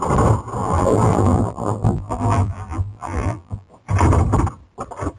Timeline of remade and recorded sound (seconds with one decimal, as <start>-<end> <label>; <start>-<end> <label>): 0.0-0.6 recorded; 0.6-3.7 remade; 3.7-5.2 recorded